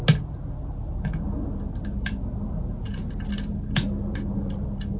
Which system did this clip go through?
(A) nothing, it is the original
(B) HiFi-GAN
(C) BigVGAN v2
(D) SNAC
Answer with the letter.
A